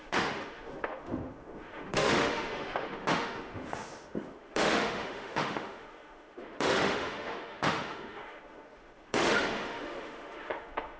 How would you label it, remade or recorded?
remade